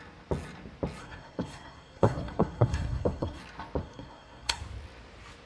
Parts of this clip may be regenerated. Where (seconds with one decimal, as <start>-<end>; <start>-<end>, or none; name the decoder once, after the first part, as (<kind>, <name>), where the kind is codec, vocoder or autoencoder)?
1.0-3.4 (codec, SNAC); 3.8-4.6